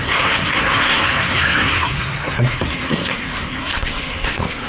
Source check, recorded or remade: remade